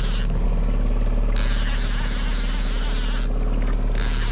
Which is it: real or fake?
real